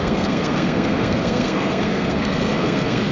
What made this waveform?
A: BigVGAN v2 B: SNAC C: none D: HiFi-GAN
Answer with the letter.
B